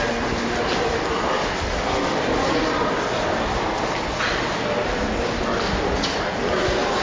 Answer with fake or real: real